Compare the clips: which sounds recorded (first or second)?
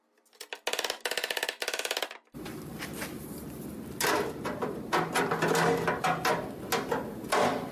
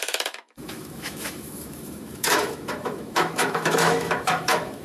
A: first